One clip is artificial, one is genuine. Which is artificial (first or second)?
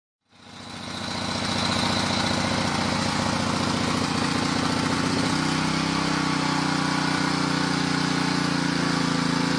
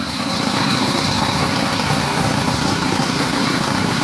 second